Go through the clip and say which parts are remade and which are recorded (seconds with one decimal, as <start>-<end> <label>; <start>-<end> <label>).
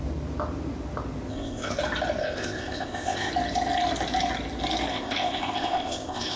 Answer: 0.0-1.3 recorded; 1.3-1.8 remade; 1.8-2.2 recorded; 2.2-3.3 remade; 3.3-4.9 recorded; 4.9-6.4 remade